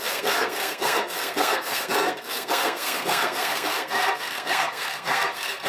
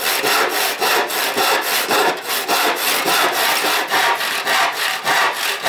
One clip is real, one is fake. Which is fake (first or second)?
first